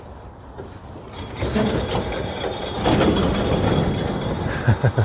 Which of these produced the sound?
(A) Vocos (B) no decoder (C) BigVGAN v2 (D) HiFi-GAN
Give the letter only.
B